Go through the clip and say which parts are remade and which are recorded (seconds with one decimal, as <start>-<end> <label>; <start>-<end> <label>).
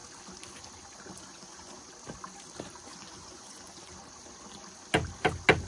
0.0-1.3 recorded; 1.3-1.9 remade; 1.9-2.9 recorded; 2.9-3.9 remade; 3.9-5.7 recorded